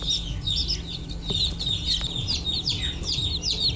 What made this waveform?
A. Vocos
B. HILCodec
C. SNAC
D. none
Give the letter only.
D